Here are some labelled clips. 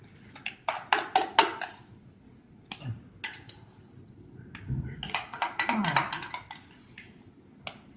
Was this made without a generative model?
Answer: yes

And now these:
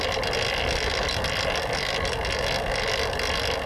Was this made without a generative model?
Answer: yes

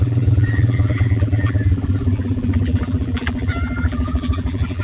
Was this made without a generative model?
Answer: no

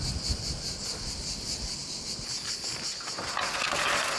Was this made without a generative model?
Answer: yes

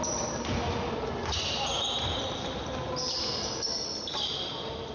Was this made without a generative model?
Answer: yes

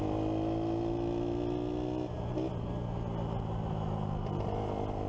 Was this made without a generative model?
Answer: yes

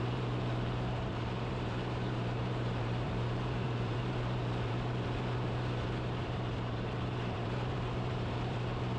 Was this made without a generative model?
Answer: no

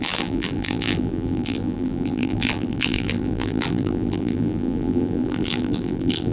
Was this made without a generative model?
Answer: no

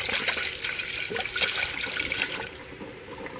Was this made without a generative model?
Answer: no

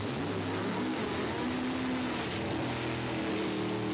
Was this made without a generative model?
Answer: yes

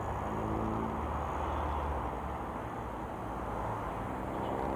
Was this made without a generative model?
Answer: yes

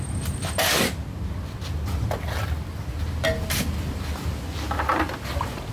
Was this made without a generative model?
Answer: yes